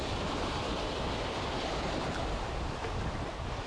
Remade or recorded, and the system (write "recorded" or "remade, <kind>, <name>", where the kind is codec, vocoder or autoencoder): recorded